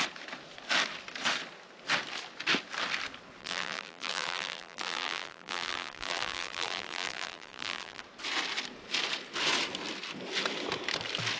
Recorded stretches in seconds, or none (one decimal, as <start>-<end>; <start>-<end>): 0.0-3.4; 8.0-11.4